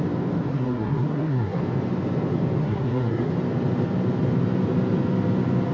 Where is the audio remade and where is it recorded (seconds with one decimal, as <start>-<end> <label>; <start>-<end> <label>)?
0.0-0.5 recorded; 0.5-1.6 remade; 1.6-2.6 recorded; 2.6-3.3 remade; 3.3-5.7 recorded